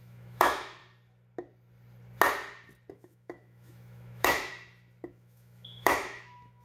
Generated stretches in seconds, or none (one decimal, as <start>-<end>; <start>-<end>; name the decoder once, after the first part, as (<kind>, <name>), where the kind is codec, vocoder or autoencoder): 0.0-0.8 (autoencoder, DAC-VAE); 2.9-4.5; 5.1-6.6

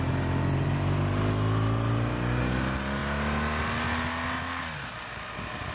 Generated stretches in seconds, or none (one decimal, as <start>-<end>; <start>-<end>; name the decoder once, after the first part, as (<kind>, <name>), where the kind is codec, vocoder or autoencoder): none